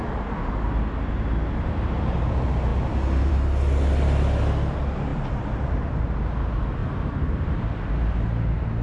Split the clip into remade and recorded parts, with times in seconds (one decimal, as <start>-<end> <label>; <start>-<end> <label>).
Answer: 0.0-5.1 recorded; 5.1-6.0 remade; 6.0-8.8 recorded